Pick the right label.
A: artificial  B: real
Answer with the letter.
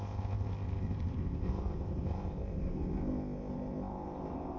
A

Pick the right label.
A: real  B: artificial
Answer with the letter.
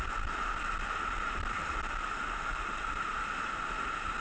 A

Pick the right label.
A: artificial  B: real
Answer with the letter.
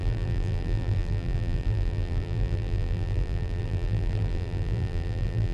A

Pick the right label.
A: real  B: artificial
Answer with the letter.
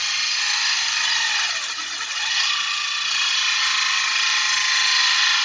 A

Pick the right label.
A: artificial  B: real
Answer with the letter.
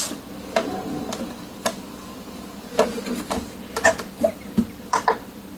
B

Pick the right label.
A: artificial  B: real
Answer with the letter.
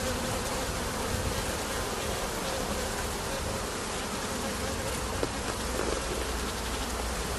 B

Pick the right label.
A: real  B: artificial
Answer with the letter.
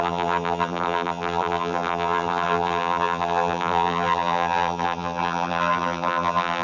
B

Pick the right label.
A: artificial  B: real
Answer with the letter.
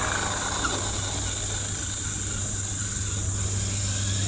B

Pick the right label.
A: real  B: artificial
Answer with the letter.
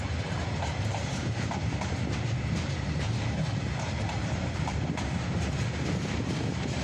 B